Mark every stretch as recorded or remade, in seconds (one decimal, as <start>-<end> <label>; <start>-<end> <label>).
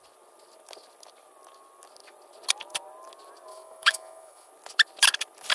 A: 0.0-3.5 recorded; 3.5-4.5 remade; 4.5-5.5 recorded